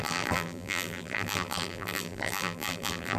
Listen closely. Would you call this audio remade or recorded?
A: remade